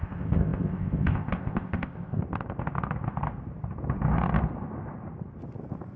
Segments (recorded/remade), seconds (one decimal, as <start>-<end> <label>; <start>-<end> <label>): 0.0-2.2 remade; 2.2-6.0 recorded